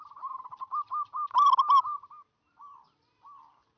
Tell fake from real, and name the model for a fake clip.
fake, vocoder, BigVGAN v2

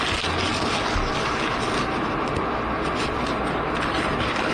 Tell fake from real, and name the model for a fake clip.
real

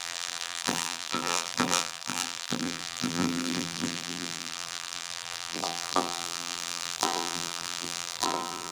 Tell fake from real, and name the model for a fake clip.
fake, vocoder, BigVGAN v2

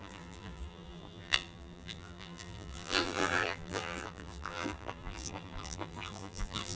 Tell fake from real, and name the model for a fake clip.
fake, vocoder, BigVGAN v2